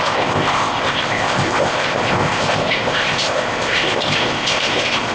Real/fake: fake